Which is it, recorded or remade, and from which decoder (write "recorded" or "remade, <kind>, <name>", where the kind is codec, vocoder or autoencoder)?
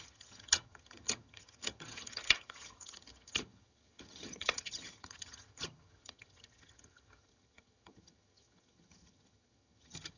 remade, vocoder, HiFi-GAN